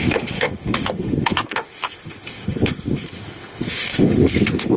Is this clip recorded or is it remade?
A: remade